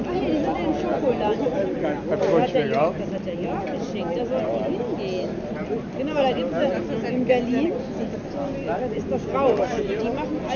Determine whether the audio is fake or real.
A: real